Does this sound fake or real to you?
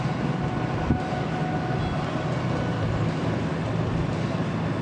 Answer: real